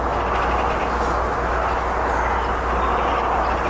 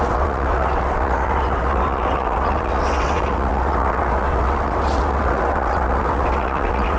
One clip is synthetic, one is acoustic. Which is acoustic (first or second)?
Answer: first